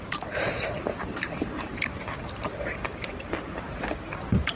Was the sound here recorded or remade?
remade